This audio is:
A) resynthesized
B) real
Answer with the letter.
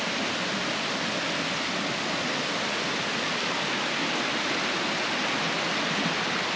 B